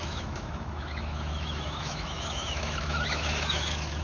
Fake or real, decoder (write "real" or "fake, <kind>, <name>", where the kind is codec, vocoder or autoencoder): fake, autoencoder, DAC-VAE